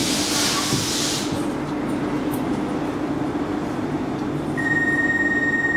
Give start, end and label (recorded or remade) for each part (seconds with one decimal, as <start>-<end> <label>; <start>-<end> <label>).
0.0-5.8 recorded